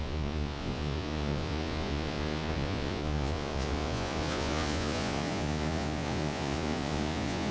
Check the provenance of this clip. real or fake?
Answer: fake